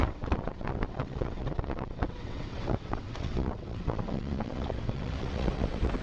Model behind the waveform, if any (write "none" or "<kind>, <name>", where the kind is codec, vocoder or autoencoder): vocoder, WaveNeXt